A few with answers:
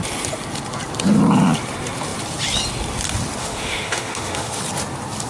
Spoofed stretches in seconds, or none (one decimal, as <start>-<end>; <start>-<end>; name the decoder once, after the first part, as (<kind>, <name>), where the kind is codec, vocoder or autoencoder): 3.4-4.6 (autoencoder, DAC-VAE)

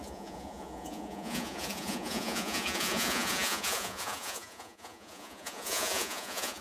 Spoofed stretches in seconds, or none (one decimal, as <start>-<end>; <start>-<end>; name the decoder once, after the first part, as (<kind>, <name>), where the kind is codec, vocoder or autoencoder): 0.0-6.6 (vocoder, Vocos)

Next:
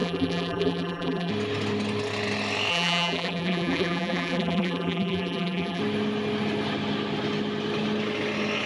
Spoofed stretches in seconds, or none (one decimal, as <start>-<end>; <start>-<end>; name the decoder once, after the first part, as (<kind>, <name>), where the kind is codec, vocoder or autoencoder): 0.0-1.3 (vocoder, BigVGAN v2); 2.7-5.8

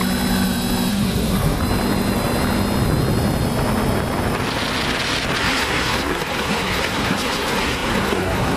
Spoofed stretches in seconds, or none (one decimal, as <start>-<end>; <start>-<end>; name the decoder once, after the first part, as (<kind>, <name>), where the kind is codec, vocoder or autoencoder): 0.9-1.6 (codec, SNAC); 5.4-8.6

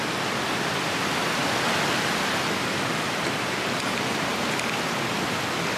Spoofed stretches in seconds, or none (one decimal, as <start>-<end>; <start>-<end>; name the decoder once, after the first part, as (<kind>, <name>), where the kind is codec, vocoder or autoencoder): none

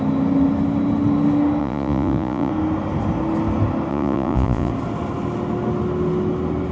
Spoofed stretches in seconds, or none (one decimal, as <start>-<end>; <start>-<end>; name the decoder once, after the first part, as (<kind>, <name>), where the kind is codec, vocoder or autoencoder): 1.6-2.5 (vocoder, Vocos); 3.9-4.7

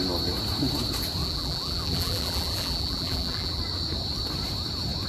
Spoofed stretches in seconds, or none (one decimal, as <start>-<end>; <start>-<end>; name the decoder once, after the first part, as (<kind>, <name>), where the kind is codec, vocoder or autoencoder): 1.2-3.6 (vocoder, BigVGAN v2)

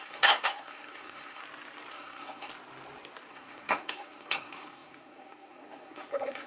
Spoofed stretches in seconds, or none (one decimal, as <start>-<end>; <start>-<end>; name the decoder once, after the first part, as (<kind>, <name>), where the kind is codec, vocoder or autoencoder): 0.0-1.4 (codec, SNAC); 1.9-2.5; 3.3-6.5